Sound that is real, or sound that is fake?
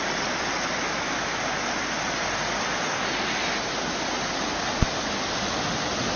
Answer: real